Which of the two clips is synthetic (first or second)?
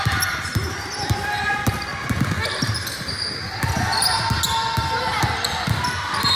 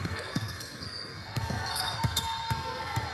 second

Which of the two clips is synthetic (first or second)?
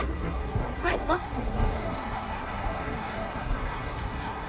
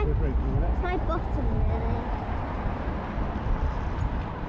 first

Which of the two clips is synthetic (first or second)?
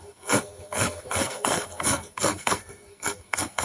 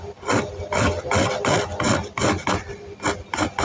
first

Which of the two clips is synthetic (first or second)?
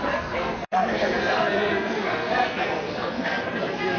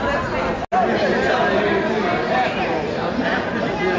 first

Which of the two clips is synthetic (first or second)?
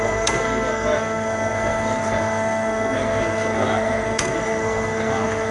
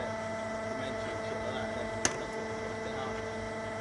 first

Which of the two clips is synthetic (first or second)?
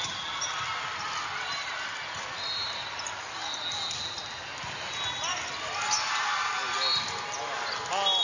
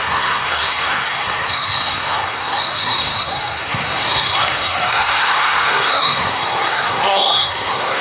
second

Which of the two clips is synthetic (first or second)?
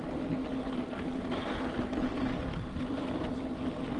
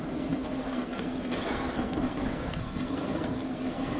second